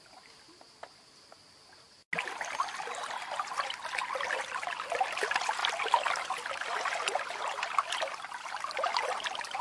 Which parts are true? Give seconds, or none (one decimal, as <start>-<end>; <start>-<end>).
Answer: 0.0-9.6